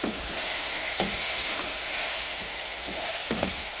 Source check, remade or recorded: remade